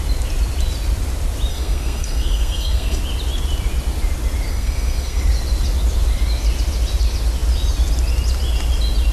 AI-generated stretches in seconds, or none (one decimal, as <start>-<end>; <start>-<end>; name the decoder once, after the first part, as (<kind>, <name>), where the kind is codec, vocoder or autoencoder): 1.5-3.0 (codec, SNAC); 4.5-5.2